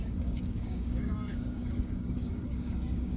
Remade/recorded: remade